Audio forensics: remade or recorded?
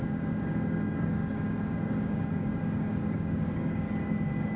remade